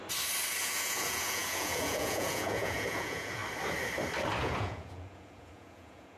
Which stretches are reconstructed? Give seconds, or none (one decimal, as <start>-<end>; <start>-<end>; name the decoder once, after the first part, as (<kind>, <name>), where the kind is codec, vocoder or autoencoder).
0.6-3.4 (vocoder, Vocos); 4.4-6.2